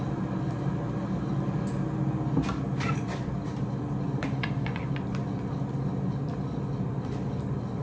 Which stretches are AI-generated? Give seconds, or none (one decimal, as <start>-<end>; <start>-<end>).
4.2-4.8